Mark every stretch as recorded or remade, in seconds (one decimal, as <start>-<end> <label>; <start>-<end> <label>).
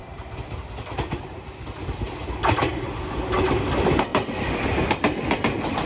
0.0-5.9 recorded